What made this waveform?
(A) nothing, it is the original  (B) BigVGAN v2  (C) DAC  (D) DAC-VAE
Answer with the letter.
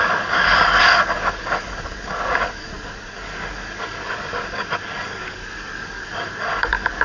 C